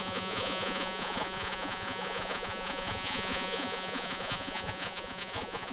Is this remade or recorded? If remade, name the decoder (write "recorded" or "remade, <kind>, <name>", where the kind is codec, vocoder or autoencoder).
remade, vocoder, Vocos